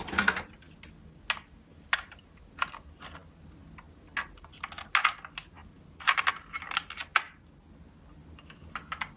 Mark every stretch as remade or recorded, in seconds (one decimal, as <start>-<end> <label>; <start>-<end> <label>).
0.0-9.2 recorded